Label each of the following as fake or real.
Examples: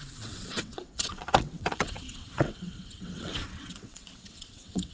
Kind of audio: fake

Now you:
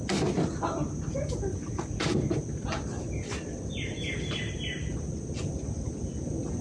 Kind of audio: real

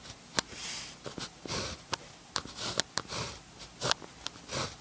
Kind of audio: real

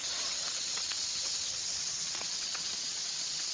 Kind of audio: fake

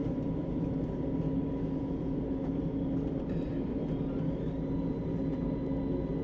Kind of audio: real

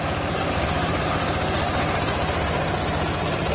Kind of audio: real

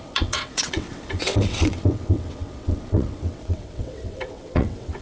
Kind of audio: fake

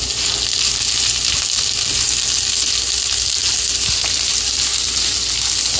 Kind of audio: real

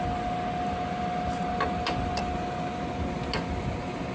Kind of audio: real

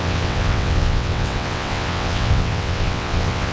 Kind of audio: fake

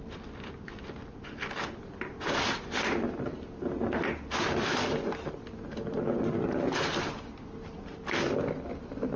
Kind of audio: real